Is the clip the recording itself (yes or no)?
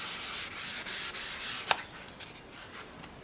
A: yes